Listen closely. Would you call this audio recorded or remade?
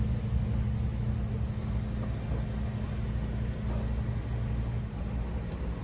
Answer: recorded